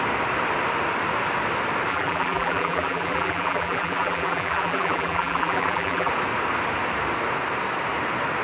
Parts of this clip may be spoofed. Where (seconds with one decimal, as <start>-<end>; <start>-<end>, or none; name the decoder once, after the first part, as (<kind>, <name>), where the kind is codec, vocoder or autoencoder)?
1.9-6.1 (vocoder, BigVGAN v2)